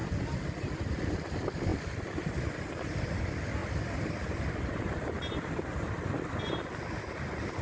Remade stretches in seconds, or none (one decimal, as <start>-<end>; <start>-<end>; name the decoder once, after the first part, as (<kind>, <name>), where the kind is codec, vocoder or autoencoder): none